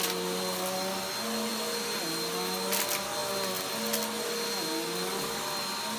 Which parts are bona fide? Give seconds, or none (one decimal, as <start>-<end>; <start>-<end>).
0.0-6.0